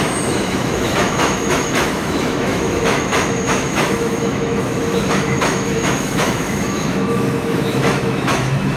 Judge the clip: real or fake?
fake